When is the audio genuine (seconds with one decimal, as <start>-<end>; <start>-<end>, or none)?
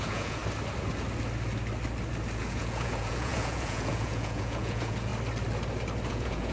0.4-2.4; 5.1-6.1